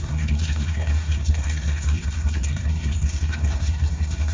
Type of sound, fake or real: fake